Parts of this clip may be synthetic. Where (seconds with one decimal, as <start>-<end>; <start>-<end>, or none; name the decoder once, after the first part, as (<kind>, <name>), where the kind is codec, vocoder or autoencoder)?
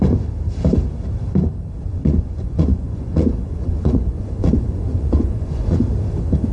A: 1.9-5.8 (vocoder, Vocos)